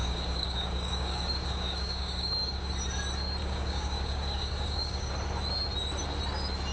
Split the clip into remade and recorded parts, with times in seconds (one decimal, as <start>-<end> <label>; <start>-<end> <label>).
0.0-2.7 remade; 2.7-3.4 recorded; 3.4-5.1 remade; 5.1-6.7 recorded